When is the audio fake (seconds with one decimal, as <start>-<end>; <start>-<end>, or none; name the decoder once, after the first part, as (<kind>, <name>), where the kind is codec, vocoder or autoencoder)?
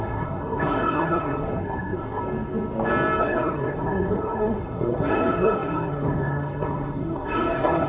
0.0-2.2 (codec, SNAC); 3.2-7.9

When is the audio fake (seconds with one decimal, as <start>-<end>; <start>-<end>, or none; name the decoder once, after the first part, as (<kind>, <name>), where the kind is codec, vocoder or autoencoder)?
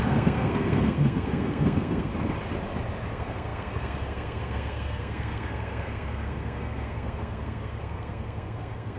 0.0-2.1 (codec, SNAC); 3.1-9.0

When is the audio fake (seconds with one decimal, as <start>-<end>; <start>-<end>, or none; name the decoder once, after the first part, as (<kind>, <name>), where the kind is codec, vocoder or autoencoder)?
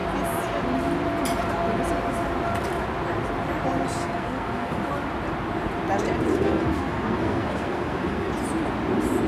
4.0-4.8 (codec, SNAC); 6.3-8.3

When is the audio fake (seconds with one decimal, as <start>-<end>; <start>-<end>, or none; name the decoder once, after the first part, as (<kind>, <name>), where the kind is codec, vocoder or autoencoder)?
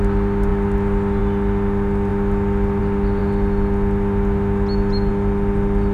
none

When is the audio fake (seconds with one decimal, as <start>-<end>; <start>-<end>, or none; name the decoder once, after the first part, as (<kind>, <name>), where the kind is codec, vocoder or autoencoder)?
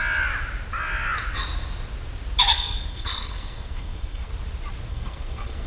2.5-4.3 (codec, SNAC); 4.9-5.7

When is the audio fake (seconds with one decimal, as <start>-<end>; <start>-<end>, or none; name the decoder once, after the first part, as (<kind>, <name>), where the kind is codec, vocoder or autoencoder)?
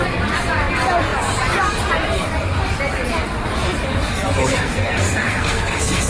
4.4-6.1 (codec, SNAC)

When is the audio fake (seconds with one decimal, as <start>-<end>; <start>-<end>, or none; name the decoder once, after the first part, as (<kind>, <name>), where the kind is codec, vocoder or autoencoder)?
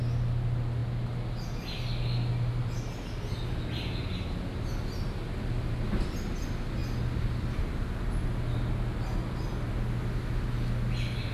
none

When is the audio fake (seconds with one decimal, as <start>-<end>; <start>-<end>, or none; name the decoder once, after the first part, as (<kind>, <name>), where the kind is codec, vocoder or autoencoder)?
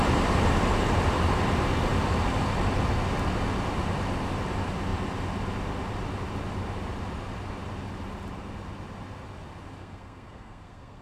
9.8-11.0 (codec, SNAC)